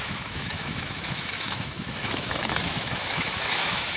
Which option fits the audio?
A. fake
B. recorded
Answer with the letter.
A